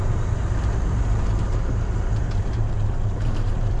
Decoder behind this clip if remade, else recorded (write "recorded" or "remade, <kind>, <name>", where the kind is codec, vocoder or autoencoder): remade, vocoder, BigVGAN v2